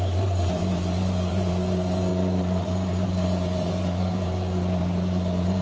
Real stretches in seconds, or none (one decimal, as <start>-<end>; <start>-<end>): none